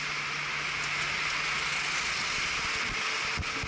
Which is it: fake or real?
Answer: real